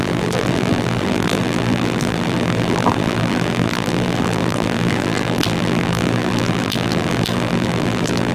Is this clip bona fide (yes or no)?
no